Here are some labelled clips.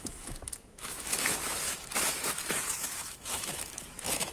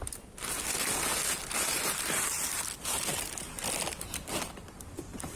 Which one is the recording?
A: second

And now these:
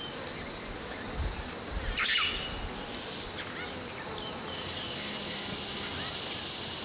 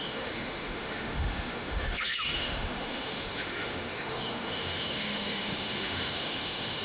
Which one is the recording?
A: first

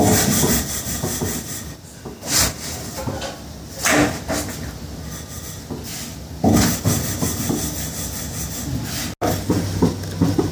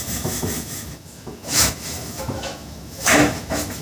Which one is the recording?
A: first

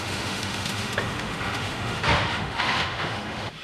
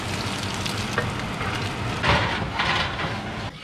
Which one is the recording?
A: second